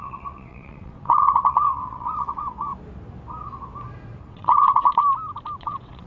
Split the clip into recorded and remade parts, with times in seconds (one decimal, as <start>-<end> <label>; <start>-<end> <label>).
0.0-2.7 remade; 2.7-4.2 recorded; 4.2-5.0 remade; 5.0-5.6 recorded; 5.6-6.1 remade